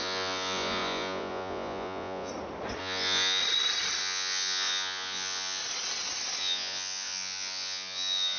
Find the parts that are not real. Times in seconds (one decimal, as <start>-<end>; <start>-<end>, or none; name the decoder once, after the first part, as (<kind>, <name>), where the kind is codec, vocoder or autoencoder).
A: 0.0-2.3 (vocoder, Vocos); 2.8-3.4; 4.0-5.6; 6.4-8.4